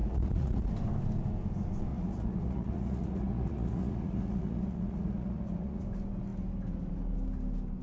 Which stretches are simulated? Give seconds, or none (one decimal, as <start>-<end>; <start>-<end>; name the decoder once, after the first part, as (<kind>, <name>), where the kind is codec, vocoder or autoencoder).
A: 0.0-0.7 (vocoder, Vocos); 1.9-5.8